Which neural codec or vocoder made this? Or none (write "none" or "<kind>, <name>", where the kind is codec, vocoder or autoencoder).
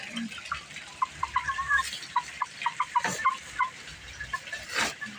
vocoder, BigVGAN v2